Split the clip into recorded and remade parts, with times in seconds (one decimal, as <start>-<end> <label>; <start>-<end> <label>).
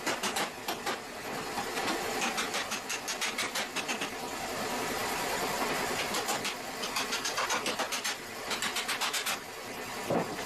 0.0-10.5 recorded